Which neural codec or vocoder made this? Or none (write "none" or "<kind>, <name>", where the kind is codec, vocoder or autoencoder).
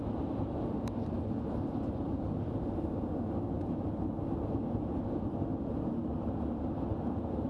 none